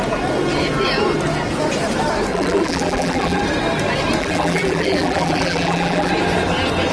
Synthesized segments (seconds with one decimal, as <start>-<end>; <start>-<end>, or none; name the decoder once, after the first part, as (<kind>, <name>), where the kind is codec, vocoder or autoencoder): 2.3-3.4 (vocoder, BigVGAN v2); 4.2-6.1